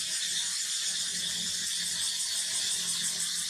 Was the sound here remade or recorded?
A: recorded